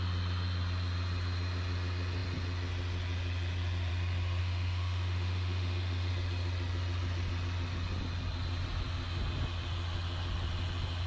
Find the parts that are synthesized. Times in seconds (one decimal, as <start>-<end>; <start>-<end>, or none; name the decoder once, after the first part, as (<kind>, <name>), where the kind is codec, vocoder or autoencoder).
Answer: 4.4-6.1 (autoencoder, DAC-VAE)